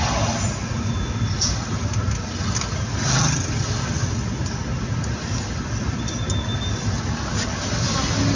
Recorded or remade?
recorded